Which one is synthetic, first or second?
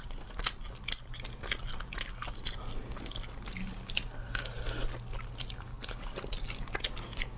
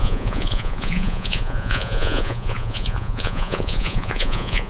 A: second